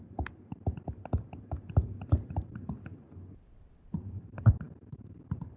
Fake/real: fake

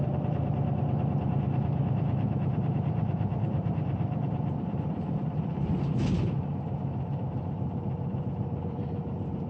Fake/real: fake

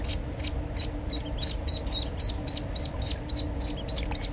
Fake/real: real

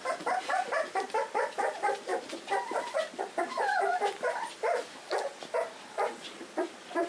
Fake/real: fake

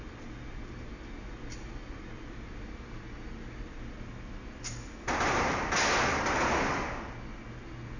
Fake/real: real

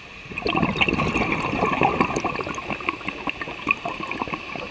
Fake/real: real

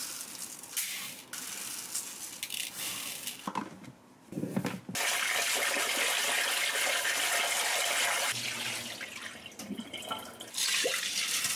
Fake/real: real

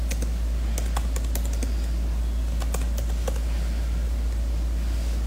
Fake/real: real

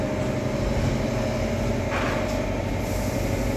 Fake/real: real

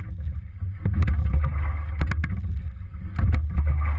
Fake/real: real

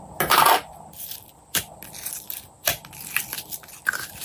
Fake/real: real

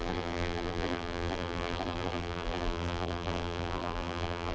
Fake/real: fake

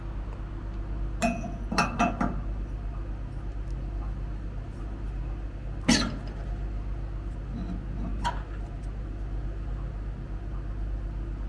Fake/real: real